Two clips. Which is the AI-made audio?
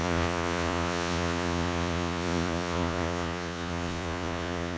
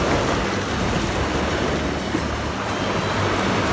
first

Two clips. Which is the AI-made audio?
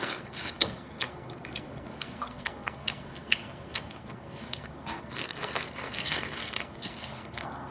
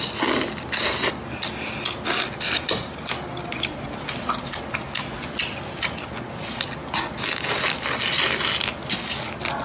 first